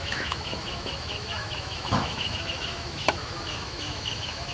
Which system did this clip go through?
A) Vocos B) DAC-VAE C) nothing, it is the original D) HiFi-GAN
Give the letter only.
B